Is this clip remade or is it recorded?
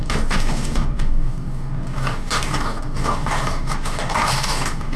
remade